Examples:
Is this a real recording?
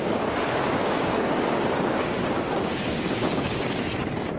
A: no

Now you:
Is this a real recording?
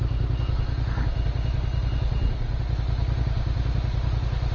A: yes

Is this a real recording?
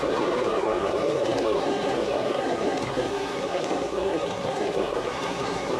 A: no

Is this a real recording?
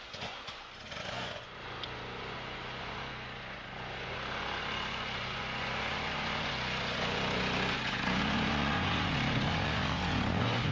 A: no